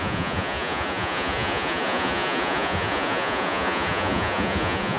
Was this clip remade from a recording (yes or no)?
yes